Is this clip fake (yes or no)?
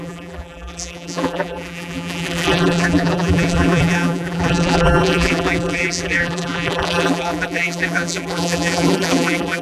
yes